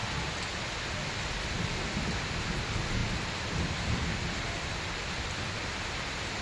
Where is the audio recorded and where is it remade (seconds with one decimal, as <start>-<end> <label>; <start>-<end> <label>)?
0.0-6.4 recorded